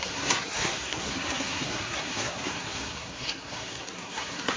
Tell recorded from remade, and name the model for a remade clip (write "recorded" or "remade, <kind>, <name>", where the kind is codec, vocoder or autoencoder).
remade, codec, SNAC